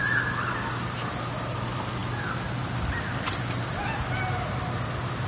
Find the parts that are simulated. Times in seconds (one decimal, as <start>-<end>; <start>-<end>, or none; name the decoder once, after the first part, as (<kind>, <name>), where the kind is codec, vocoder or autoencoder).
0.0-3.8 (vocoder, BigVGAN v2)